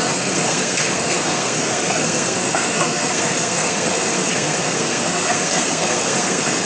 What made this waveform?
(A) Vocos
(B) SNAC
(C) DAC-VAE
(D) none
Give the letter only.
B